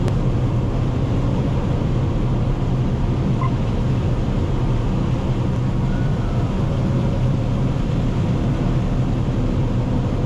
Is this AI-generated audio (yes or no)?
no